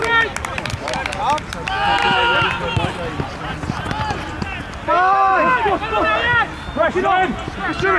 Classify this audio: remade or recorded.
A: recorded